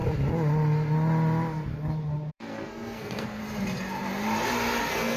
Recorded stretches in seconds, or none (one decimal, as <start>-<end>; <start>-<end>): 0.0-2.3; 3.4-4.8